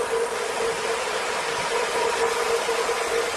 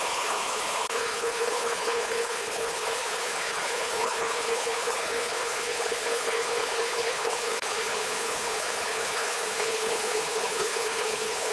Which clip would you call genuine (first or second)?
first